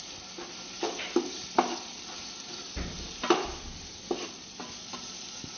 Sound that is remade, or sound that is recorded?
remade